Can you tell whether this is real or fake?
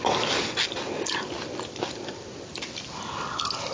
real